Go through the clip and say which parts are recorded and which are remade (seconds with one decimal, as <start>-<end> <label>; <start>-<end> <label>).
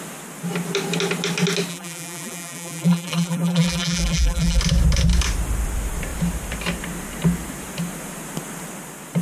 0.0-1.7 recorded; 1.7-4.6 remade; 4.6-9.2 recorded